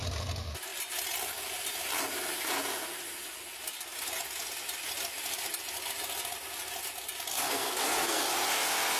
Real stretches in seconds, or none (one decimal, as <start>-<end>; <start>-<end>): 0.0-7.3; 8.2-9.0